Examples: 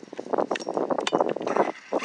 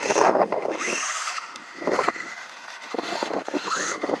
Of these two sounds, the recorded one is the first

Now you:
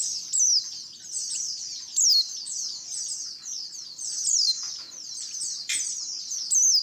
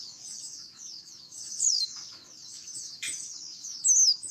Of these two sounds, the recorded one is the first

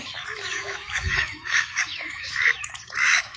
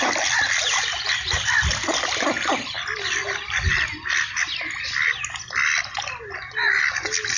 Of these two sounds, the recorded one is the second